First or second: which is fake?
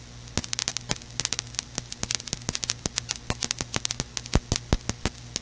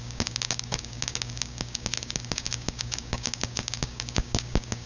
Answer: second